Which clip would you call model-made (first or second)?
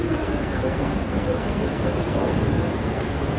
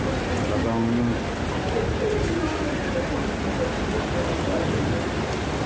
first